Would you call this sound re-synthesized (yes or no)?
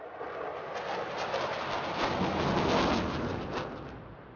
no